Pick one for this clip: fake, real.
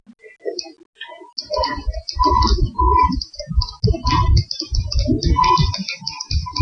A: real